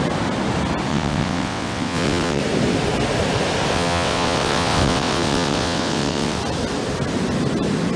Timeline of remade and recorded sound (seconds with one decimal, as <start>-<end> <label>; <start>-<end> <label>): 0.0-0.9 recorded; 0.9-2.4 remade; 2.4-3.7 recorded; 3.7-6.4 remade; 6.4-8.0 recorded